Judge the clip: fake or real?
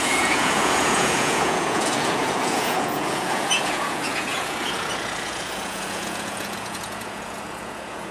fake